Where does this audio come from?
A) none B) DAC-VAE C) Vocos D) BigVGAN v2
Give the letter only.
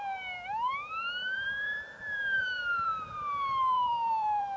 D